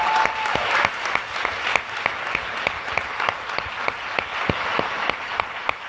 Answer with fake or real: real